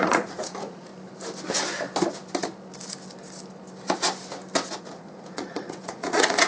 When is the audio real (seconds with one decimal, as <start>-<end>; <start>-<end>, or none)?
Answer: 0.9-4.8